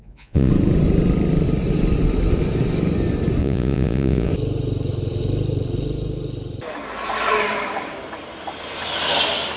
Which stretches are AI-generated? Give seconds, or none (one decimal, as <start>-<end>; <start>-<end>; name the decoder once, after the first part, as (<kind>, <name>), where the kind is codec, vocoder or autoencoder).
0.0-0.5 (vocoder, Vocos); 3.4-4.3

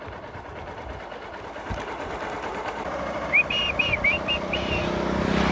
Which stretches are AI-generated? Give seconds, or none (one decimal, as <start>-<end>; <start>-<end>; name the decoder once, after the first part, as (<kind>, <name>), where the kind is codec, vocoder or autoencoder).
none

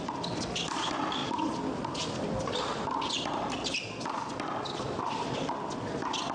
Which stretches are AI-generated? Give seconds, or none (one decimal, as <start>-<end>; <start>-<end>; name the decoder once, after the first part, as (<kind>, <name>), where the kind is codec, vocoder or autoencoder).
none

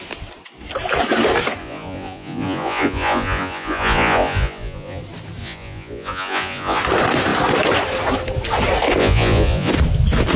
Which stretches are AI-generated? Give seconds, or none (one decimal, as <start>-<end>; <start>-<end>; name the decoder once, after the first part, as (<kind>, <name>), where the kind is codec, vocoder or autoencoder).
1.6-5.0 (vocoder, Vocos); 5.4-6.8; 9.0-9.7

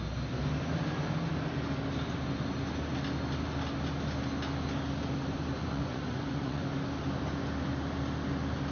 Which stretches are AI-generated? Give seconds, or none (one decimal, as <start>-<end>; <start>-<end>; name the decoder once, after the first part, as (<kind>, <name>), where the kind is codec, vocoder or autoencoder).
5.6-6.6 (vocoder, Vocos)

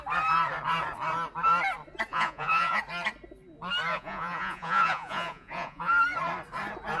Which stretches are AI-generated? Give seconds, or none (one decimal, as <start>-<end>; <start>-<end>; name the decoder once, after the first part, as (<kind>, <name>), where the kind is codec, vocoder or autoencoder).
2.1-2.8 (vocoder, Vocos); 3.9-5.9